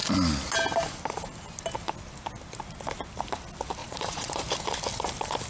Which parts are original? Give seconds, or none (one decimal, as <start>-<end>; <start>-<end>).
0.0-3.8; 4.4-5.5